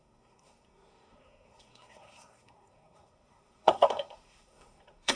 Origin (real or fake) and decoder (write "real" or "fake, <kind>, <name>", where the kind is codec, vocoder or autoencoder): fake, codec, SNAC